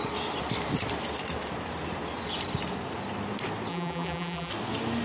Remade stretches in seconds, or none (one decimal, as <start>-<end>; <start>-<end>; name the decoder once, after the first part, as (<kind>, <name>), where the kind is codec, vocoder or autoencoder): 3.7-4.5 (vocoder, BigVGAN v2)